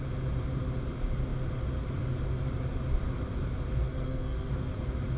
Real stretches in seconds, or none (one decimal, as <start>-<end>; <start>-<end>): 0.0-3.8; 4.5-5.2